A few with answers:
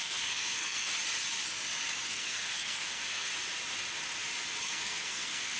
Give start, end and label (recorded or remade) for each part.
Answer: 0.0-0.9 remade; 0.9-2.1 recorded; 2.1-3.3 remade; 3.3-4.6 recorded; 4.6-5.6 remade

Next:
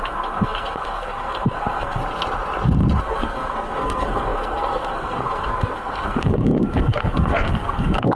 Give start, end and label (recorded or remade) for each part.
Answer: 0.0-2.0 remade; 2.0-3.0 recorded; 3.0-8.2 remade

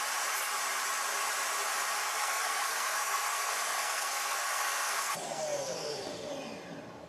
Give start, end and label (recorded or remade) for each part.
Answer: 0.0-2.0 recorded; 2.0-6.3 remade; 6.3-7.1 recorded

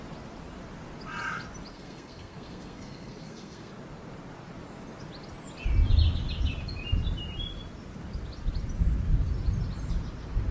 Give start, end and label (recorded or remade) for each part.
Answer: 0.0-1.7 recorded; 1.7-3.7 remade; 3.7-10.5 recorded

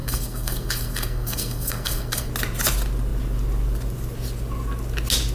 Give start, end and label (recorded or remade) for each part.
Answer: 0.0-2.3 remade; 2.3-5.3 recorded